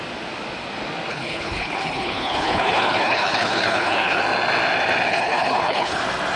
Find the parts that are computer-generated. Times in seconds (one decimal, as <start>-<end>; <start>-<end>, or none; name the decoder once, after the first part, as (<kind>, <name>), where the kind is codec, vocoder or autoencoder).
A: 1.1-4.2 (codec, HILCodec); 5.1-6.0